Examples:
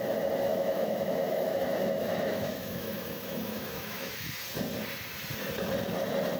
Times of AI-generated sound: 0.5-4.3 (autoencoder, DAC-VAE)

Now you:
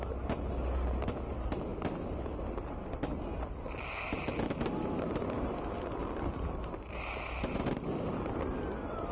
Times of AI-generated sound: 1.7-3.1 (vocoder, BigVGAN v2); 6.0-8.5

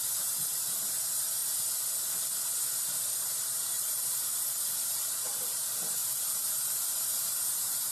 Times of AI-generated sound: 0.0-1.4 (vocoder, BigVGAN v2); 3.4-7.9

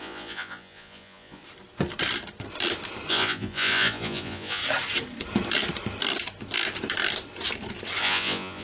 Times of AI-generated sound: 0.0-1.4 (vocoder, Vocos); 3.1-4.6; 8.0-8.6

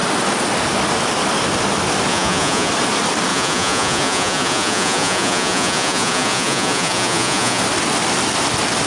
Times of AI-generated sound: 2.1-2.7 (vocoder, Vocos); 3.3-7.6

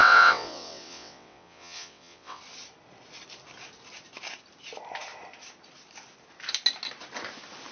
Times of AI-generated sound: 0.0-2.4 (vocoder, WaveNeXt)